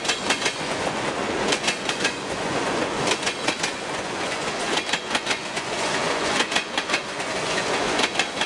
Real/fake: fake